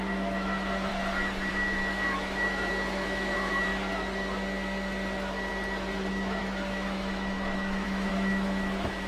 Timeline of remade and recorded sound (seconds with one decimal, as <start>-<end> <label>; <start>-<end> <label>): 0.0-0.9 remade; 0.9-1.5 recorded; 1.5-3.7 remade; 3.7-6.1 recorded; 6.1-9.1 remade